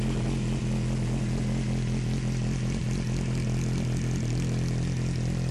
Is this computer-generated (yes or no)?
no